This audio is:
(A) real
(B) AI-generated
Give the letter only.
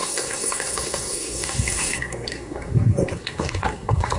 B